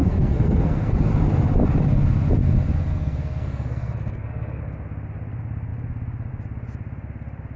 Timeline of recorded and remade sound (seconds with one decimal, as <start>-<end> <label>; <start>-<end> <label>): 0.0-1.1 remade; 1.1-2.9 recorded; 2.9-4.6 remade; 4.6-7.6 recorded